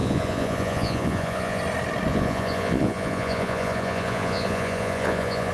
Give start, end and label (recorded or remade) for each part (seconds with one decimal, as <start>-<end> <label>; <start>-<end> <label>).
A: 0.0-1.6 remade; 1.6-2.1 recorded; 2.1-5.5 remade